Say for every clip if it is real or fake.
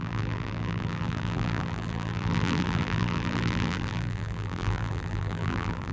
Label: fake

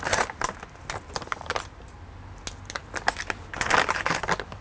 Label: real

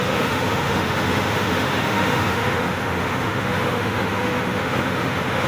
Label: fake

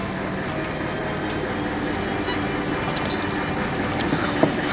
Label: real